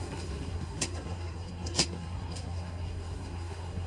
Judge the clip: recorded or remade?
remade